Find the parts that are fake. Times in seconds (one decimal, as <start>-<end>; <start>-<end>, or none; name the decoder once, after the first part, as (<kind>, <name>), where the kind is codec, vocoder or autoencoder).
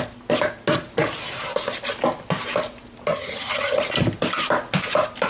3.1-3.8 (vocoder, HiFi-GAN)